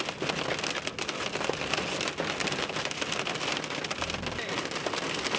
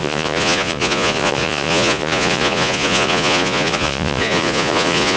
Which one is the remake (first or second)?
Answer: second